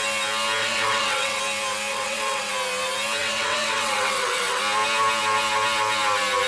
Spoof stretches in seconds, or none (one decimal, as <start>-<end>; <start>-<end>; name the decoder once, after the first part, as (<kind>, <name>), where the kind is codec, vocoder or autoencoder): 0.6-1.4 (vocoder, WaveNeXt); 1.9-2.5; 3.2-4.6